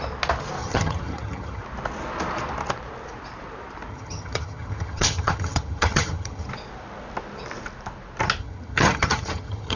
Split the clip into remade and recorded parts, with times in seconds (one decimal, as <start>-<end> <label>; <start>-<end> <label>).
0.0-0.6 recorded; 0.6-1.6 remade; 1.6-3.9 recorded; 3.9-6.5 remade; 6.5-8.4 recorded; 8.4-9.8 remade